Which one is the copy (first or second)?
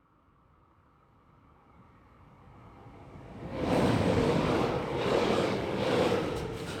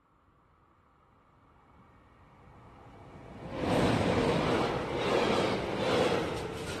first